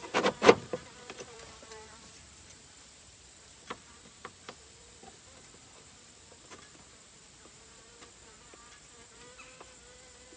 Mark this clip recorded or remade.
remade